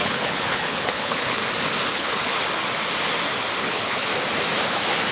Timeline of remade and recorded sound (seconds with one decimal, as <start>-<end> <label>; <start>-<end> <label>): 0.0-1.4 remade; 1.4-1.9 recorded; 1.9-2.3 remade; 2.3-3.6 recorded; 3.6-4.1 remade; 4.1-5.1 recorded